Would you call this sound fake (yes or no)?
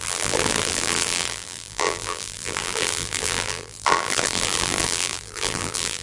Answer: yes